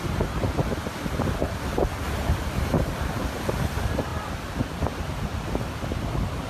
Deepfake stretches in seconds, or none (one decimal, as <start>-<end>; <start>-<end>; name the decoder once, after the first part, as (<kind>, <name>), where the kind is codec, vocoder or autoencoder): 4.1-5.4 (vocoder, BigVGAN v2)